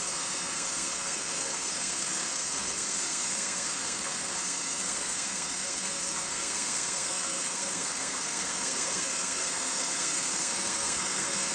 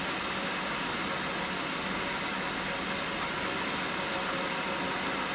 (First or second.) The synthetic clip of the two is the first